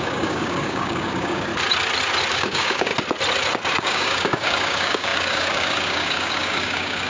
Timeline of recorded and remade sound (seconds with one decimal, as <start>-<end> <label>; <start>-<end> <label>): 0.0-1.5 remade; 1.5-2.3 recorded; 2.3-2.9 remade; 2.9-3.8 recorded; 3.8-7.1 remade